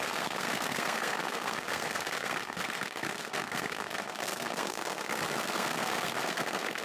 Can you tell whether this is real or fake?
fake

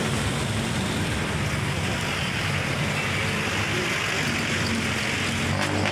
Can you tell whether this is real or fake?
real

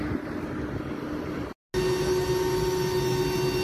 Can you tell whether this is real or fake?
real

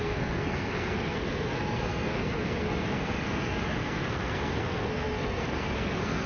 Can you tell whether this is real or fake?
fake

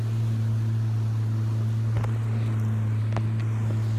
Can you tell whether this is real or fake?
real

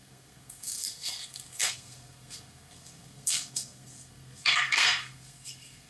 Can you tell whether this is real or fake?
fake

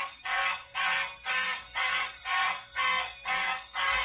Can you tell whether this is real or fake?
fake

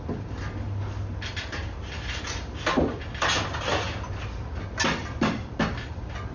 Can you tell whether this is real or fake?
real